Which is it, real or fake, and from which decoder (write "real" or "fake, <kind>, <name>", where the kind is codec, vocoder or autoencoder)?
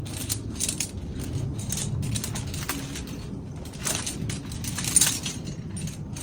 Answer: real